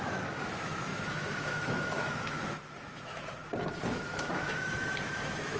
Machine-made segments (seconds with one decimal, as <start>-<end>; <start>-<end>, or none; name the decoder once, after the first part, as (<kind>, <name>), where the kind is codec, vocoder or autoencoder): 0.0-3.4 (autoencoder, DAC-VAE); 3.9-5.6